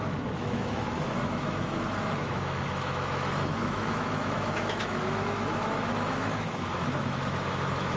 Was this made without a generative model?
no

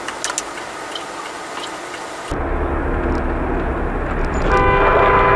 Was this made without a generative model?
yes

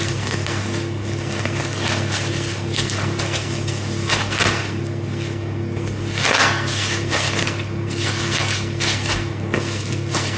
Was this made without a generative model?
no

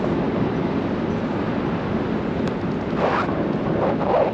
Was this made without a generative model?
yes